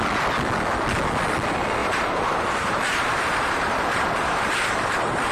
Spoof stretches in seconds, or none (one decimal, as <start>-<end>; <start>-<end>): 1.8-5.3